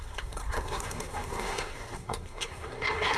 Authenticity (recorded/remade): remade